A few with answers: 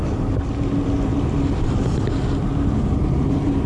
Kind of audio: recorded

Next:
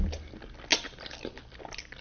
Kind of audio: recorded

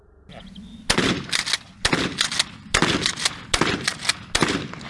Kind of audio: recorded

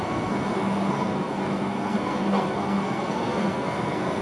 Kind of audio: remade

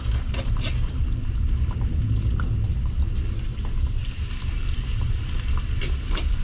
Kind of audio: recorded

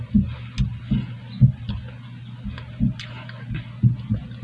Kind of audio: recorded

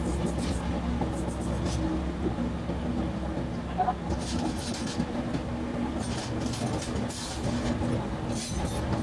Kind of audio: recorded